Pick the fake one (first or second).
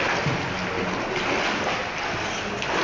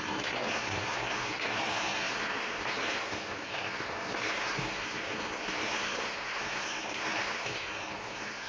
second